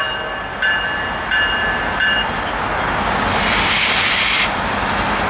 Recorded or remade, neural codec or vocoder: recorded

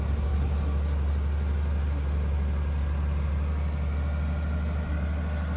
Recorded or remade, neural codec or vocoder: recorded